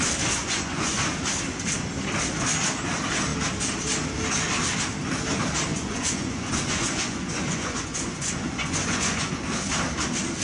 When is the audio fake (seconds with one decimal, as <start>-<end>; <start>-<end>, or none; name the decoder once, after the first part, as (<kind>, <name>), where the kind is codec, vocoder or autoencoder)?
0.4-1.0 (vocoder, Vocos); 5.7-9.4